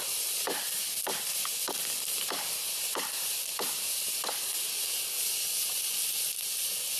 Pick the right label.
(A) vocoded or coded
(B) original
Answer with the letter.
B